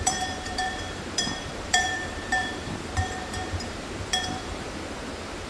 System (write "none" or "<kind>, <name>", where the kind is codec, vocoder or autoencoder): vocoder, BigVGAN v2